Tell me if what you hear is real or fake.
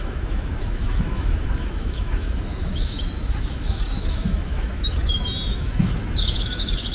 fake